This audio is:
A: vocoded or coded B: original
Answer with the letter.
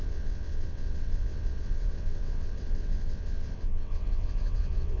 A